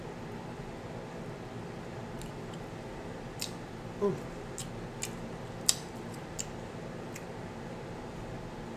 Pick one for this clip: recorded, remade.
recorded